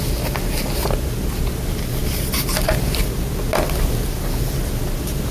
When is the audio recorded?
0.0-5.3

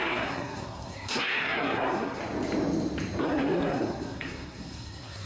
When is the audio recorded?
2.2-3.2

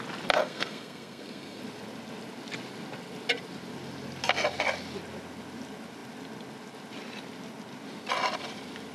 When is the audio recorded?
0.0-0.4; 1.6-8.9

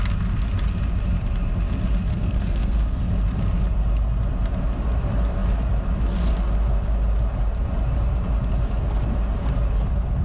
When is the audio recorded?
0.0-2.1; 3.1-10.2